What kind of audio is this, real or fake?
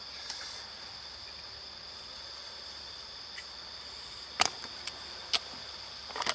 real